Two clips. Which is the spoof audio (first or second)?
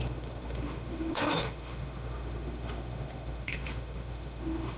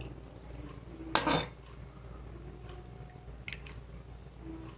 first